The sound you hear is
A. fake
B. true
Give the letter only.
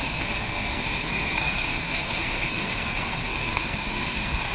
A